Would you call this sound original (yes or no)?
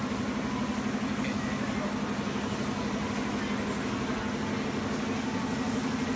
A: yes